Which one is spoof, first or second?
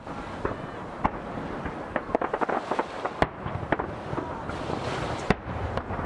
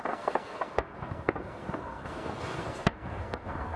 second